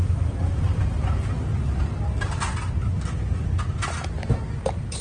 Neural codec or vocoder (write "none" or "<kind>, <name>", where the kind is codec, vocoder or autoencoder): none